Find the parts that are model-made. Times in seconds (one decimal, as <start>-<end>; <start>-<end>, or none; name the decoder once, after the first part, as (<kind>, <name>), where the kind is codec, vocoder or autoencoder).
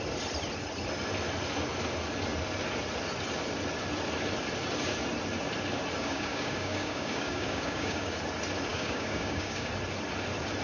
6.0-8.2 (codec, DAC); 8.7-9.7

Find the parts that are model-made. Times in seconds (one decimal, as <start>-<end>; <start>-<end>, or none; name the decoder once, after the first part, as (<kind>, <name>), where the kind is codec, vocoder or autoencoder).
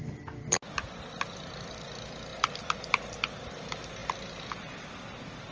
none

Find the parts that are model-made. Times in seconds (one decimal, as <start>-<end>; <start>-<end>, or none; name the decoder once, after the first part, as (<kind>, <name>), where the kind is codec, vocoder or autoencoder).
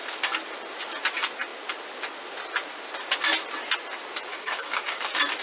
4.3-5.0 (codec, DAC)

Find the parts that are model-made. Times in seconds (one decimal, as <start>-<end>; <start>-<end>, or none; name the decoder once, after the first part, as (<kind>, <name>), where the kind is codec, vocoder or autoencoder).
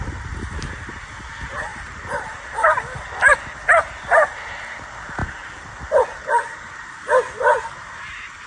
none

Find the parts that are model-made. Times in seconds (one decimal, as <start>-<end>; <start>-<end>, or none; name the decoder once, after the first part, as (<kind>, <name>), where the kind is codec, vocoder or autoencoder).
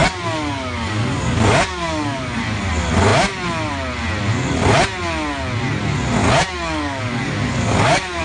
0.0-2.7 (codec, DAC); 6.2-8.2